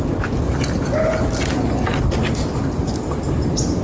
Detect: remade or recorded recorded